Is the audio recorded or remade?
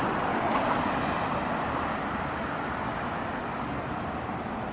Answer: recorded